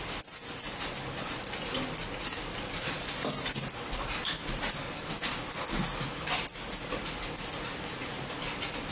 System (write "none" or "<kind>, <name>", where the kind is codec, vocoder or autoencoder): none